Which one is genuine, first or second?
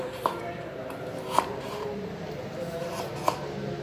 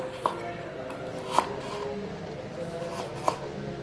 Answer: second